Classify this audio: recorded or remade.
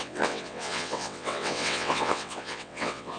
remade